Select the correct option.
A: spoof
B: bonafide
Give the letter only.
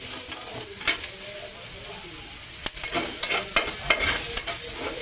B